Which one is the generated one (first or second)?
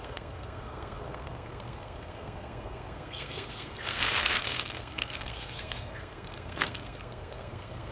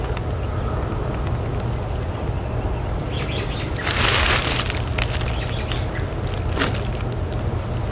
first